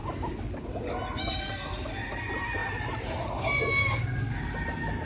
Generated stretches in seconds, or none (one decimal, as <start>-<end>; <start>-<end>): 3.8-4.4